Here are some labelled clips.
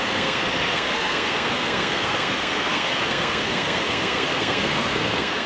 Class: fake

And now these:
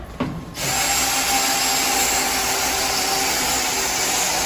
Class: real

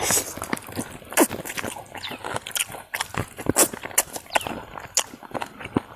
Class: real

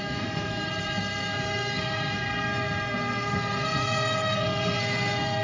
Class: fake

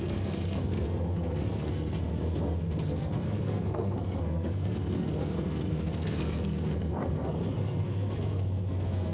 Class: fake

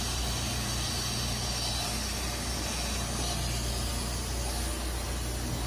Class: real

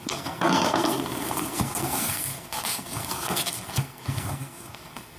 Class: fake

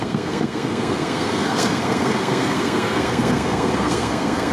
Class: fake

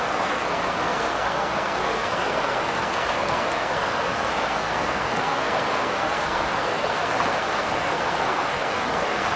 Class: fake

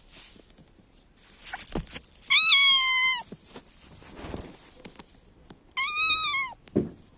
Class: real